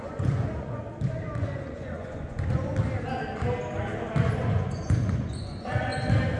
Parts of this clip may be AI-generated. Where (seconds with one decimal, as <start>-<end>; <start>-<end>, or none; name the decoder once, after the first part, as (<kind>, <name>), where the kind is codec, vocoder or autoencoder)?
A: 0.0-0.8 (vocoder, Vocos); 1.4-2.7; 4.4-5.9